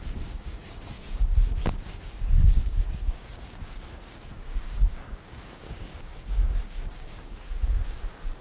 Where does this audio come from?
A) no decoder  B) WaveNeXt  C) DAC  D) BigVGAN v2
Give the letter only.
C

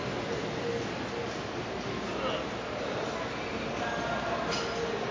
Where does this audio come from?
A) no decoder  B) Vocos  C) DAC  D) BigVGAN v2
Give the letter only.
A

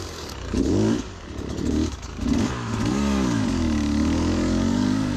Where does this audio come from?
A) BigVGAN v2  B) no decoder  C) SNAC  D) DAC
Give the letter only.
D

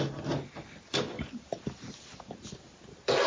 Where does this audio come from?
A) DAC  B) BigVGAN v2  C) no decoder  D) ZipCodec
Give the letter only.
C